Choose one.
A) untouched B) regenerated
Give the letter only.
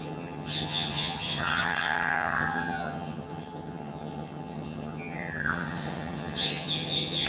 B